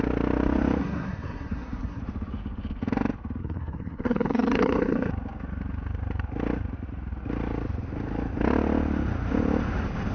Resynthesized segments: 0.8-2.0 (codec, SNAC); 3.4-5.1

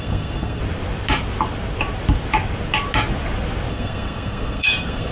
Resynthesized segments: 0.0-0.6 (codec, SNAC); 3.7-5.1